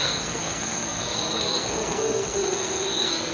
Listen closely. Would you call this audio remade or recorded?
remade